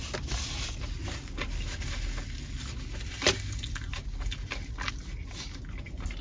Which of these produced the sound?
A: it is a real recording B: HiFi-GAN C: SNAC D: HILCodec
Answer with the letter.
A